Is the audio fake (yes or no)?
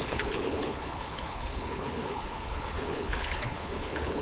yes